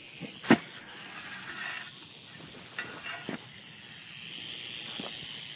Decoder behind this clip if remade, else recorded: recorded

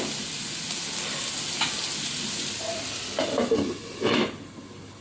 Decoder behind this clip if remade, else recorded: recorded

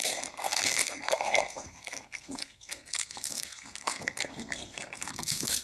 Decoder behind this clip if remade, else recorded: remade, codec, SNAC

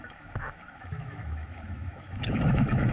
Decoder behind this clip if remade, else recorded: remade, autoencoder, DAC-VAE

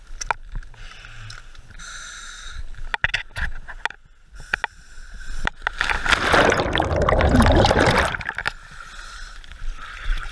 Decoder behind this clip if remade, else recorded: recorded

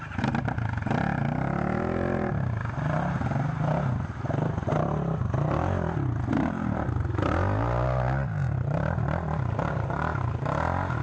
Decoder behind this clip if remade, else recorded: recorded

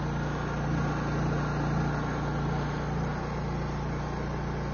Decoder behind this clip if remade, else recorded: recorded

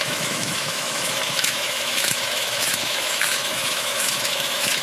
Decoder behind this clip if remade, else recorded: remade, autoencoder, DAC-VAE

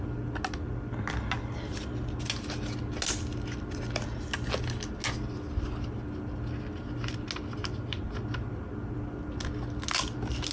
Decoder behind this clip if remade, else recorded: recorded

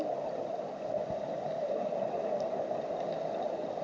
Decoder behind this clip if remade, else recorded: recorded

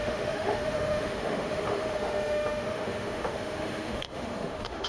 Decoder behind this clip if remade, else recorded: remade, autoencoder, DAC-VAE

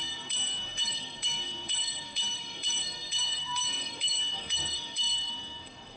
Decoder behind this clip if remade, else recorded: remade, codec, SNAC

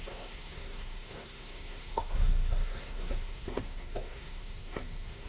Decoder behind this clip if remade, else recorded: remade, codec, SNAC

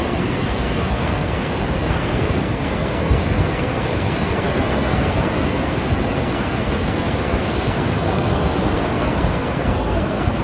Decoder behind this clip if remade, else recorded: remade, codec, SNAC